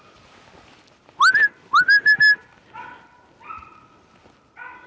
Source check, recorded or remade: recorded